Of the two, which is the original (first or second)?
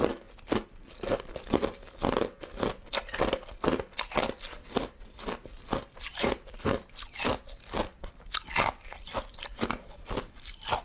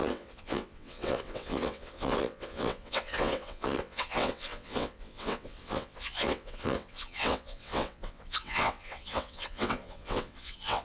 first